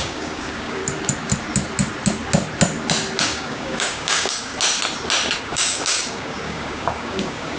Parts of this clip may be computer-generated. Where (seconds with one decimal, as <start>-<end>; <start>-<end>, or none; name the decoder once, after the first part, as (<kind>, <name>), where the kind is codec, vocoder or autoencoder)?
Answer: 0.0-0.8 (codec, DAC); 3.2-4.5; 5.4-7.6